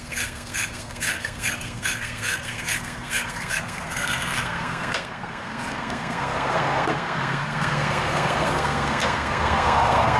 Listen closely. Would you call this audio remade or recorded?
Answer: remade